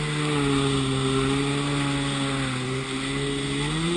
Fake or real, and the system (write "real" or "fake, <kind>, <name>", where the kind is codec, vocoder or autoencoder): real